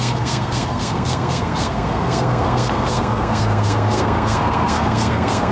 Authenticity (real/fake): fake